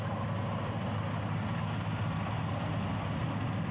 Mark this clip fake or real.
real